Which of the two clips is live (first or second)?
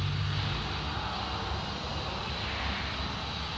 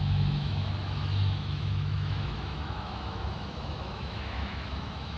first